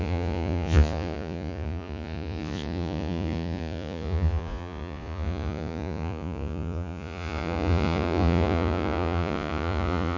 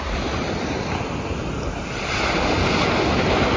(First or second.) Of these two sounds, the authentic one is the second